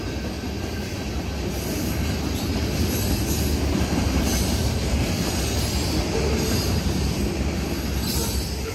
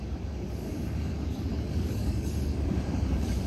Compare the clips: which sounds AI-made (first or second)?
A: second